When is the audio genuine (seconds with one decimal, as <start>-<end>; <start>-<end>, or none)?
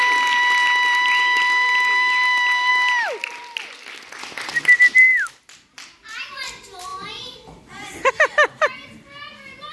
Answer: 0.0-9.7